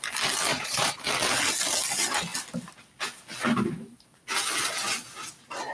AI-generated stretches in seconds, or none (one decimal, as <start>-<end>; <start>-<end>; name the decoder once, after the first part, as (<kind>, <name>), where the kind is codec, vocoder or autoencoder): 0.5-1.0 (vocoder, Vocos)